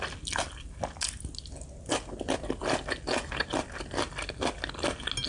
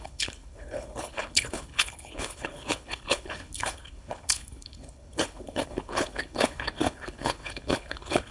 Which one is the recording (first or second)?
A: first